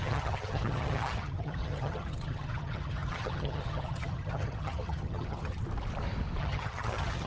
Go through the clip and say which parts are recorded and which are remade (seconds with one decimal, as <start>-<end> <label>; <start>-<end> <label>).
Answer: 0.0-5.6 remade; 5.6-6.4 recorded; 6.4-7.3 remade

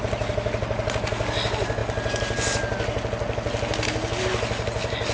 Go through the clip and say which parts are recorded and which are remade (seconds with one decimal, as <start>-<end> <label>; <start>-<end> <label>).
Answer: 0.0-5.1 recorded

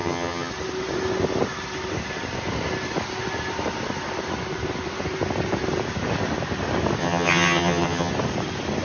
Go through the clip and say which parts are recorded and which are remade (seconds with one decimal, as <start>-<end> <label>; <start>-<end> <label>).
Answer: 0.0-0.5 remade; 0.5-7.0 recorded; 7.0-8.1 remade; 8.1-8.8 recorded

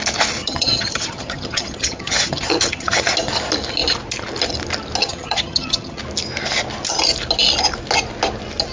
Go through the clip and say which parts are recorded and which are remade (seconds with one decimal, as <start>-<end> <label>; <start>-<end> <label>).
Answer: 0.0-0.4 recorded; 0.4-3.1 remade; 3.1-5.0 recorded; 5.0-6.0 remade; 6.0-8.7 recorded

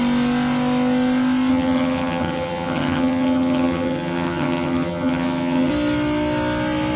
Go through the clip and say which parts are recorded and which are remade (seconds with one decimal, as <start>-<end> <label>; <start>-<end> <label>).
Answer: 0.0-1.5 recorded; 1.5-5.7 remade; 5.7-7.0 recorded

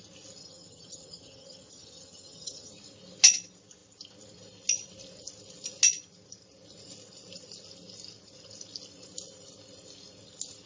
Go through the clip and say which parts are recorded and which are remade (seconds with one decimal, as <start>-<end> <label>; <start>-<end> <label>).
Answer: 0.0-0.4 recorded; 0.4-2.7 remade; 2.7-10.7 recorded

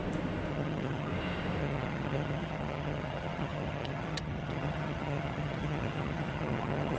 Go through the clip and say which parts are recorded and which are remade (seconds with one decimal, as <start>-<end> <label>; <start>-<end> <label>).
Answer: 0.0-0.5 recorded; 0.5-1.1 remade; 1.1-1.6 recorded; 1.6-7.0 remade

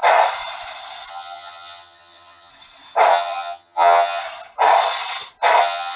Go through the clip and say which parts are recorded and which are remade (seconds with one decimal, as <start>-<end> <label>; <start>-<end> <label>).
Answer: 0.0-1.1 recorded; 1.1-2.5 remade; 2.5-3.1 recorded; 3.1-4.2 remade; 4.2-5.6 recorded; 5.6-6.0 remade